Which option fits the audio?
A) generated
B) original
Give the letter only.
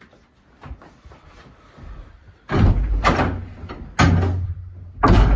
B